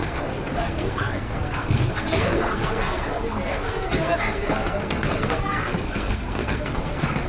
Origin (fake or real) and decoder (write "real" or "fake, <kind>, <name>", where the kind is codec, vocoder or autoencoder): fake, codec, SNAC